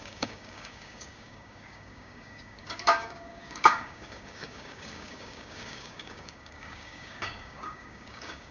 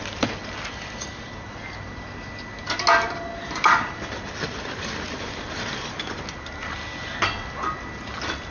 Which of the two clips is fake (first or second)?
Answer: first